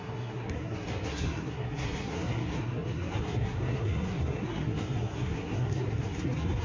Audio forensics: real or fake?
fake